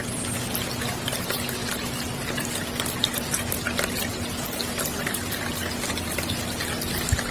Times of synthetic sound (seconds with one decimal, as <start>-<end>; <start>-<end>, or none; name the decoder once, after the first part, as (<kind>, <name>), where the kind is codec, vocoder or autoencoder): none